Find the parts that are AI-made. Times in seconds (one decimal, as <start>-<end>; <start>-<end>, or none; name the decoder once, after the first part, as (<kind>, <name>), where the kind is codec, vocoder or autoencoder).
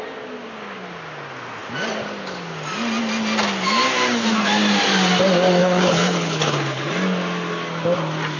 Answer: 5.6-6.9 (codec, HILCodec)